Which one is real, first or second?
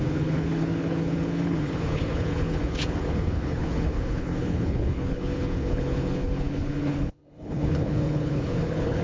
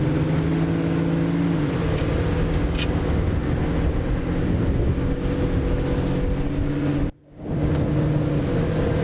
second